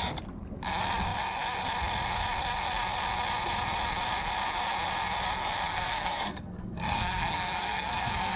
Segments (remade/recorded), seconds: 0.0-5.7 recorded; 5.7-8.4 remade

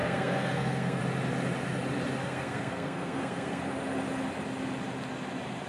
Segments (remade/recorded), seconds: 0.0-1.0 remade; 1.0-2.2 recorded; 2.2-3.6 remade; 3.6-5.7 recorded

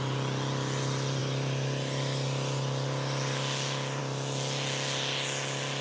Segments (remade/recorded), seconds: 0.0-5.8 recorded

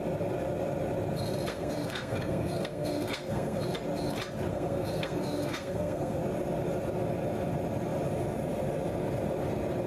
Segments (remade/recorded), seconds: 0.0-1.5 recorded; 1.5-3.6 remade; 3.6-4.5 recorded; 4.5-6.2 remade; 6.2-9.9 recorded

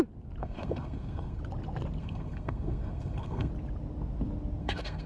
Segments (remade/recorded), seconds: 0.0-0.4 recorded; 0.4-1.4 remade; 1.4-2.0 recorded; 2.0-3.5 remade; 3.5-4.6 recorded; 4.6-5.1 remade

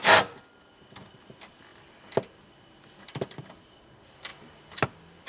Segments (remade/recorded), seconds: 0.0-5.3 recorded

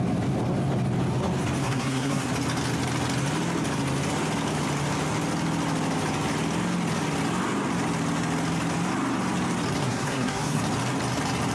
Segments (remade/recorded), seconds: 0.0-1.6 recorded; 1.6-2.3 remade; 2.3-9.8 recorded; 9.8-10.6 remade; 10.6-11.5 recorded